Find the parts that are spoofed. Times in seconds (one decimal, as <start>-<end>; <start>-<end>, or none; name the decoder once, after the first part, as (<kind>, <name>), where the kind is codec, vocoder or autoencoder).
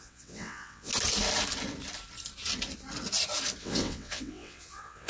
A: 0.0-0.9 (vocoder, WaveNeXt); 3.6-5.1